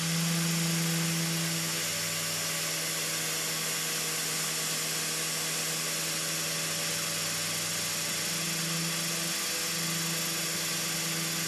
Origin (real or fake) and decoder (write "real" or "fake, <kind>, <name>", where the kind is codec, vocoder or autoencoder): real